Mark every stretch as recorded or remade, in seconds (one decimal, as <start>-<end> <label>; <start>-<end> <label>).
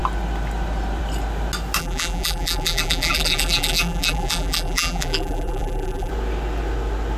0.0-1.8 recorded; 1.8-6.1 remade; 6.1-7.2 recorded